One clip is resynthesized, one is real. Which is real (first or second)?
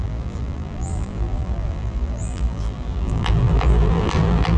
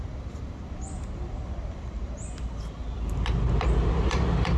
second